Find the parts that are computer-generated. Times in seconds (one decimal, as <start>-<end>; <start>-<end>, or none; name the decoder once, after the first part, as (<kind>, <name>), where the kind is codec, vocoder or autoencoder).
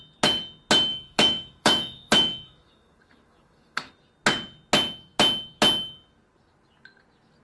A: 0.9-3.9 (autoencoder, DAC-VAE)